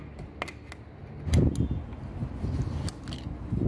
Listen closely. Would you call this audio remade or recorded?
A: recorded